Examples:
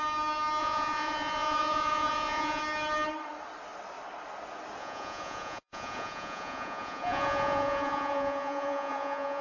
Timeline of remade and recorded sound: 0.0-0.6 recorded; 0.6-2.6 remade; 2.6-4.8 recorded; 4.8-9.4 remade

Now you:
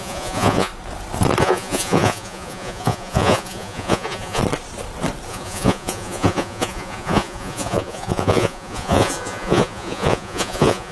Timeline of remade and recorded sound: 0.0-0.7 remade; 0.7-1.4 recorded; 1.4-4.4 remade; 4.4-5.3 recorded; 5.3-10.9 remade

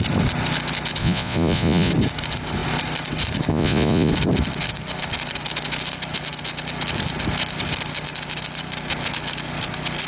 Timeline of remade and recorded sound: 0.0-1.0 recorded; 1.0-1.9 remade; 1.9-3.5 recorded; 3.5-4.1 remade; 4.1-10.1 recorded

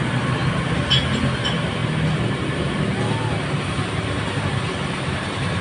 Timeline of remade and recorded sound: 0.0-5.6 recorded

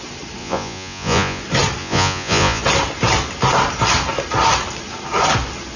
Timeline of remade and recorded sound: 0.0-0.4 recorded; 0.4-1.4 remade; 1.4-1.8 recorded; 1.8-2.6 remade; 2.6-5.8 recorded

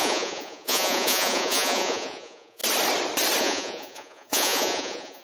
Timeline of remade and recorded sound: 0.0-2.6 remade; 2.6-3.4 recorded; 3.4-5.2 remade

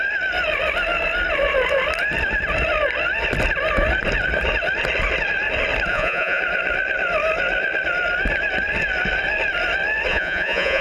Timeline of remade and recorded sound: 0.0-5.9 recorded; 5.9-6.4 remade; 6.4-10.1 recorded; 10.1-10.8 remade